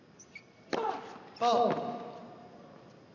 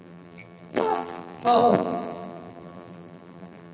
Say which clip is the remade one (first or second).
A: second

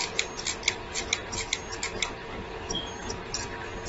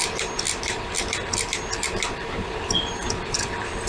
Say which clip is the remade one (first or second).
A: second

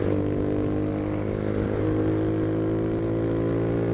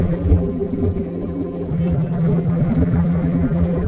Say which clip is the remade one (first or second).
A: second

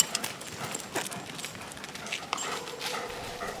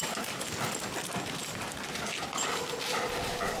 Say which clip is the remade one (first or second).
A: first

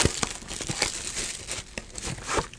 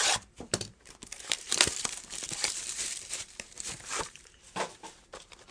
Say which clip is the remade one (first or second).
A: second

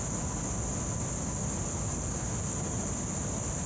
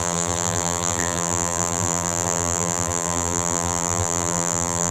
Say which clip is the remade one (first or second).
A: second